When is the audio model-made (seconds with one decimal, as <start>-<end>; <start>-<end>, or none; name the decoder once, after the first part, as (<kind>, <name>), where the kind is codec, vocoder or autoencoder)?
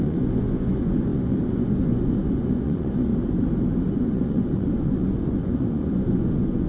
0.0-3.1 (vocoder, Vocos); 3.9-6.7